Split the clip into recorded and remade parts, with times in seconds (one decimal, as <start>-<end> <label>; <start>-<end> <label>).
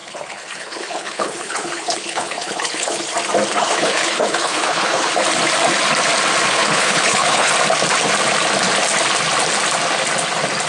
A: 0.0-3.0 remade; 3.0-3.5 recorded; 3.5-5.1 remade; 5.1-6.5 recorded; 6.5-7.5 remade; 7.5-10.7 recorded